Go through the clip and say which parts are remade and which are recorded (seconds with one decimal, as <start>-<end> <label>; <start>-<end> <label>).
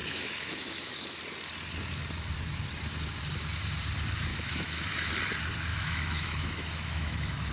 0.0-1.2 remade; 1.2-4.3 recorded; 4.3-5.1 remade; 5.1-5.7 recorded; 5.7-7.5 remade